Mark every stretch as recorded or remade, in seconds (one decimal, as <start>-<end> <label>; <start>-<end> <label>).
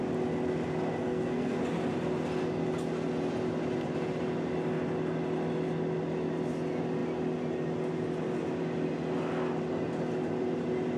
0.0-1.0 recorded; 1.0-1.6 remade; 1.6-11.0 recorded